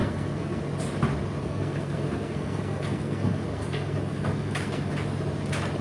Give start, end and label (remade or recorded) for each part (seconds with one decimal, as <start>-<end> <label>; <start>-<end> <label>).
0.0-0.6 remade; 0.6-1.4 recorded; 1.4-4.9 remade; 4.9-5.8 recorded